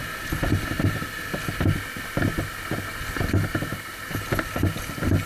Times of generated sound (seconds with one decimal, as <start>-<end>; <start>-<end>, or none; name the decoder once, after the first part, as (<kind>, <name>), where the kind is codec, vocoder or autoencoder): 3.7-4.3 (vocoder, BigVGAN v2)

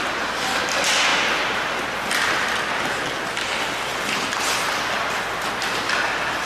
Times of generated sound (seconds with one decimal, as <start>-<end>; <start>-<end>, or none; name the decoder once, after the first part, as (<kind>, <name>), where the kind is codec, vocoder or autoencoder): none

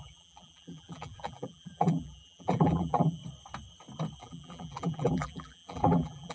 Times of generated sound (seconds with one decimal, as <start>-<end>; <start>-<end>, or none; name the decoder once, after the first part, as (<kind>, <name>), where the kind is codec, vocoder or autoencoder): 0.0-3.2 (vocoder, BigVGAN v2); 4.2-6.3

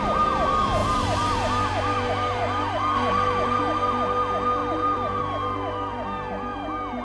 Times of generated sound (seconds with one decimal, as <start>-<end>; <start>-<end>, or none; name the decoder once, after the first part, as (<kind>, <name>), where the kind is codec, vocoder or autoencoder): 0.8-3.6 (vocoder, BigVGAN v2); 4.6-5.2

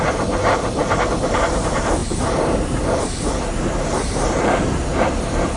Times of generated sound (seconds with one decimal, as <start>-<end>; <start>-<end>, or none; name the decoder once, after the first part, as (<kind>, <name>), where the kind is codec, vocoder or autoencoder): 0.0-0.8 (vocoder, BigVGAN v2); 1.5-4.9

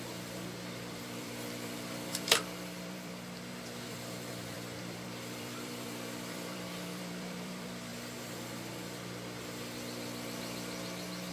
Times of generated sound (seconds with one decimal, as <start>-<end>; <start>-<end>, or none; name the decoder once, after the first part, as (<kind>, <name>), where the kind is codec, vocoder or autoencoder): 0.0-7.9 (vocoder, BigVGAN v2)

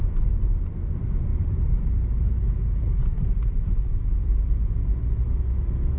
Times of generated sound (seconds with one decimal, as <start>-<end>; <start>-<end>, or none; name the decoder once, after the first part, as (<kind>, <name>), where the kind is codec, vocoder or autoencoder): 1.3-4.7 (vocoder, BigVGAN v2)

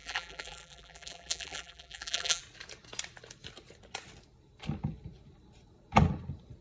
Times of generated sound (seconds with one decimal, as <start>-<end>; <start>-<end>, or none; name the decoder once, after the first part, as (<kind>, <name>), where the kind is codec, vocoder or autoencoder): 0.0-2.4 (vocoder, BigVGAN v2)